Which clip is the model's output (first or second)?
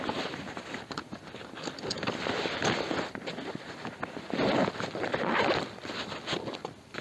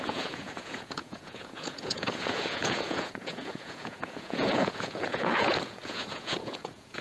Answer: second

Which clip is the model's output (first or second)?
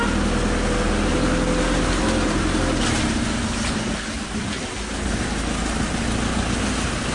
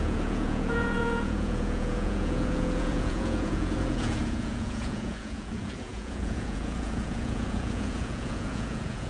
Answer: second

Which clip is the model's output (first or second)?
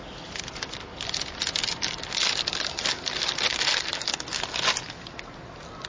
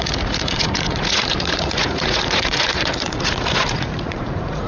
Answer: second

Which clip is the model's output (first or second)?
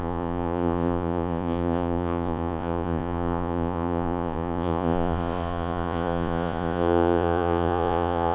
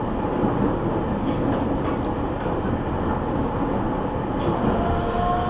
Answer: first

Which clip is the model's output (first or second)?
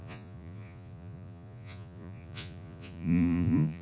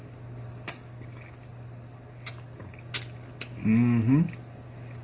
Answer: first